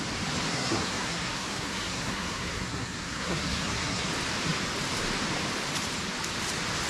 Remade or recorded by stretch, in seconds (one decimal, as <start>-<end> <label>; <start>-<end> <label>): 0.0-0.5 recorded; 0.5-4.1 remade; 4.1-6.9 recorded